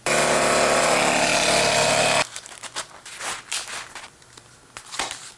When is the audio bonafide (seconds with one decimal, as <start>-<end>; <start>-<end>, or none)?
0.0-5.4